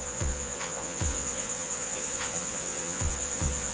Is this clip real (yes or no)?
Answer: no